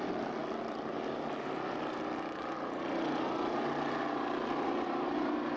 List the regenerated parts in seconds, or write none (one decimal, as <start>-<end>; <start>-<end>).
none